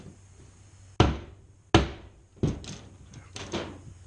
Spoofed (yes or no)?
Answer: no